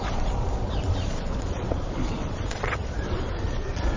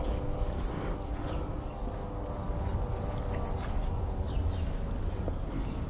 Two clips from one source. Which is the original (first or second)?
second